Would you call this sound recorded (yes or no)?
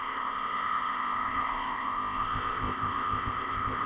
no